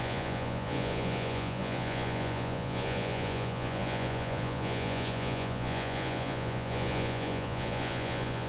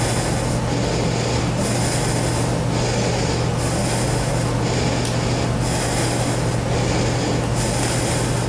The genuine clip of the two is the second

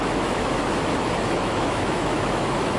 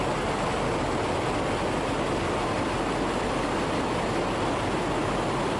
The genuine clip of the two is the second